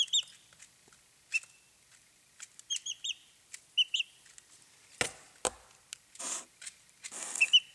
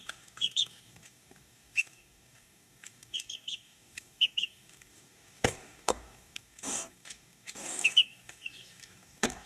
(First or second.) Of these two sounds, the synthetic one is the second